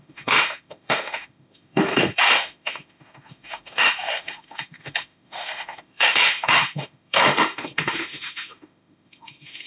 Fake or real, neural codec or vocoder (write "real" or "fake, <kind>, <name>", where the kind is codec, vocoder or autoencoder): fake, autoencoder, DAC-VAE